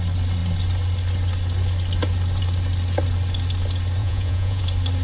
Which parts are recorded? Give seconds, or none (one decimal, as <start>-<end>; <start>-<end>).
0.0-4.0; 4.6-5.0